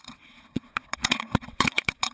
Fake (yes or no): yes